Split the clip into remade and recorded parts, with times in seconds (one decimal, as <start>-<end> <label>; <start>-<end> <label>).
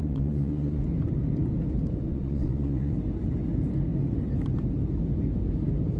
0.0-0.8 remade; 0.8-2.1 recorded; 2.1-2.9 remade; 2.9-6.0 recorded